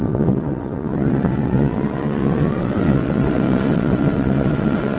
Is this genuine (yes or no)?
no